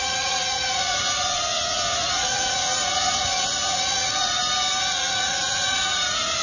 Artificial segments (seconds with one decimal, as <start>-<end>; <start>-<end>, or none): 0.0-4.4; 4.9-6.4